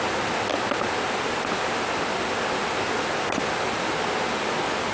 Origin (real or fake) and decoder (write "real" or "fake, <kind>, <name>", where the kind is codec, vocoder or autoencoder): real